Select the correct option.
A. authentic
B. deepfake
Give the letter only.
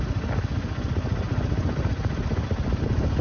A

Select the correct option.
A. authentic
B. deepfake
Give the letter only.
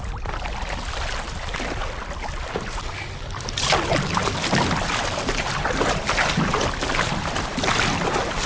A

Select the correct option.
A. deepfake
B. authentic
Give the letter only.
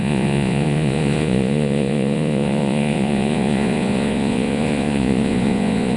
A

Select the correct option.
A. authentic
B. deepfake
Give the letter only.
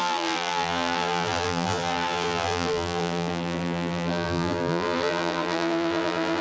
B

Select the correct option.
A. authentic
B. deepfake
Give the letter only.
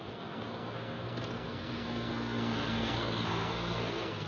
B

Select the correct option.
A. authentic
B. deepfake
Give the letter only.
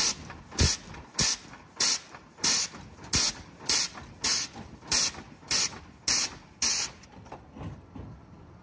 A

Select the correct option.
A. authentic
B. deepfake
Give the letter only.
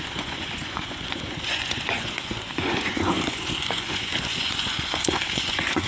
B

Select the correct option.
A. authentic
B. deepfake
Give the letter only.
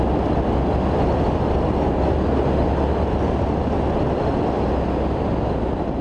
A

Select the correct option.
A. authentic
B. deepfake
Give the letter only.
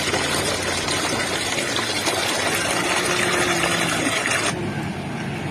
A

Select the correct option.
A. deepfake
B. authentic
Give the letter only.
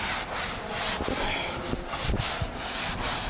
B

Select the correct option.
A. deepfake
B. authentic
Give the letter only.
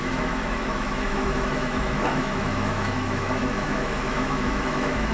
A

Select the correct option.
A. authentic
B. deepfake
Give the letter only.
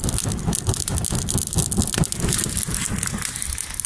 A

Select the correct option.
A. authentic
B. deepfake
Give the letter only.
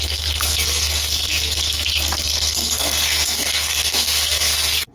B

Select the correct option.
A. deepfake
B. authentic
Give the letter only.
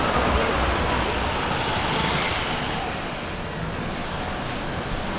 B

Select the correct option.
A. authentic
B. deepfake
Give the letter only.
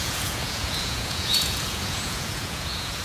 B